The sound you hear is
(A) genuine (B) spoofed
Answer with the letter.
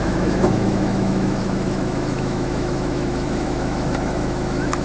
B